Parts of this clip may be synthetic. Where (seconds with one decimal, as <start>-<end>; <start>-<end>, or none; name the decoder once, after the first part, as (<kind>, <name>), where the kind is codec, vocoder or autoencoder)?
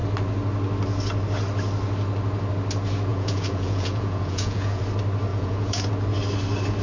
3.1-4.8 (vocoder, Vocos); 5.3-5.9